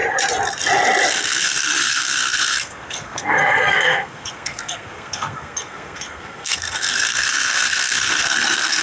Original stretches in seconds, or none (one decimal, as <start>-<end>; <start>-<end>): 0.0-1.1

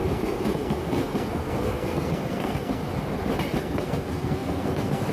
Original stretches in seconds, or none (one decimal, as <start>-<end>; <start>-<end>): 2.8-3.6

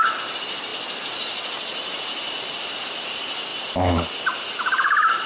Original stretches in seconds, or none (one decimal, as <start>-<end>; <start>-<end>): 0.7-2.4; 3.5-4.2